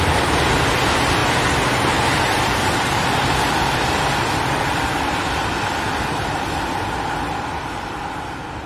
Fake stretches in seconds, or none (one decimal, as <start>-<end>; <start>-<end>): 0.0-1.2; 2.2-8.7